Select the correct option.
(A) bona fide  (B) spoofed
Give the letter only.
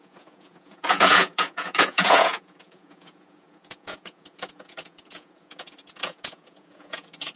B